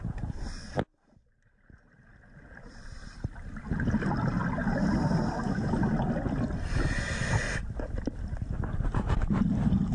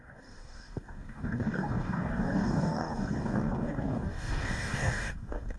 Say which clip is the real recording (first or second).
first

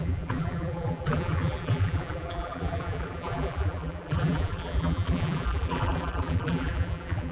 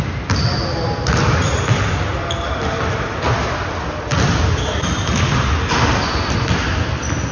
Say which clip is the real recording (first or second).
second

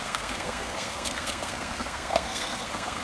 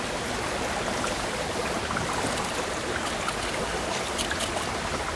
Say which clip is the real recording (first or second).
second